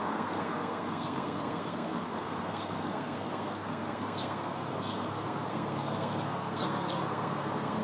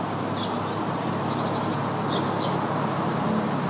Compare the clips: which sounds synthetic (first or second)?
first